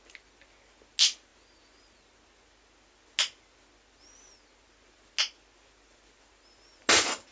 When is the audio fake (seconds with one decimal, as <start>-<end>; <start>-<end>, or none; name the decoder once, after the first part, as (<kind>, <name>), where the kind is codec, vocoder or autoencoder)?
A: none